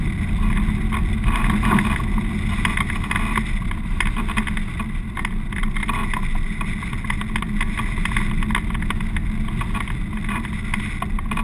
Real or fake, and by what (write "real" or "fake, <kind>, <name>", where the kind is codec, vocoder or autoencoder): real